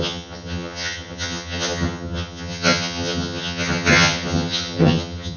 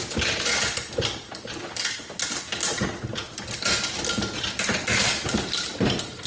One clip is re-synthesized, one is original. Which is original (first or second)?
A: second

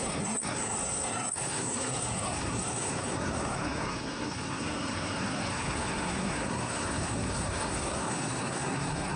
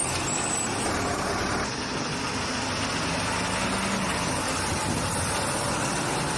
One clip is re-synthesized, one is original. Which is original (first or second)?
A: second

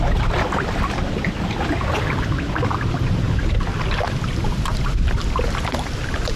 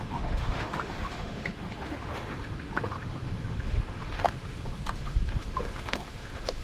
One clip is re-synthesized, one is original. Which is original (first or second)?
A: first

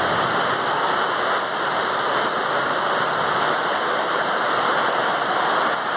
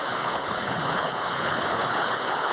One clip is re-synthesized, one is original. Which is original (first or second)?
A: first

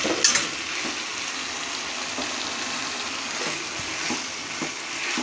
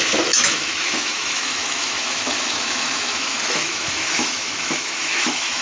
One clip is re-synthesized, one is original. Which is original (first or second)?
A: first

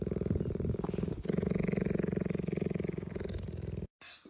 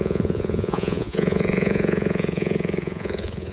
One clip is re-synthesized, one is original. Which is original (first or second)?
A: first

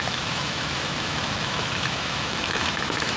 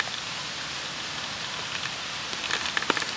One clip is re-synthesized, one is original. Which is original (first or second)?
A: second